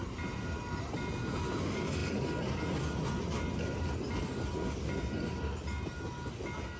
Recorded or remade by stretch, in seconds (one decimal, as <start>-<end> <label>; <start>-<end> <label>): 0.0-6.8 recorded